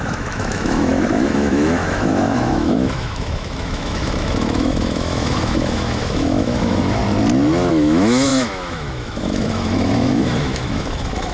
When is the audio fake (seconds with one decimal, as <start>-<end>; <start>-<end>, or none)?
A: 0.0-7.0; 7.7-11.3